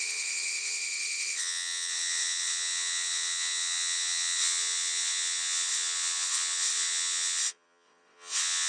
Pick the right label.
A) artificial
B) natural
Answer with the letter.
A